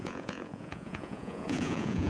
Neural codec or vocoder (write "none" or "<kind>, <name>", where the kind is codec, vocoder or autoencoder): vocoder, Vocos